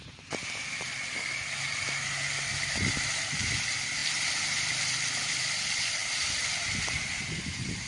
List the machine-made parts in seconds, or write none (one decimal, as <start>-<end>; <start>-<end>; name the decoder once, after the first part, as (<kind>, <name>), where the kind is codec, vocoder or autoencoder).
none